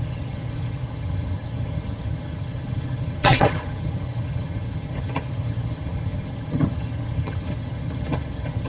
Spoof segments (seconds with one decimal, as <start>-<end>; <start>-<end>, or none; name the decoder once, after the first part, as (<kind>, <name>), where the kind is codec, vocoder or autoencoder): 0.0-8.7 (vocoder, HiFi-GAN)